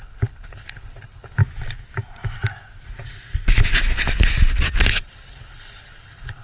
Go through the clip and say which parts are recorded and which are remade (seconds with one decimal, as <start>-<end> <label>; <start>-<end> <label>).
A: 0.0-1.4 remade; 1.4-4.9 recorded; 4.9-6.4 remade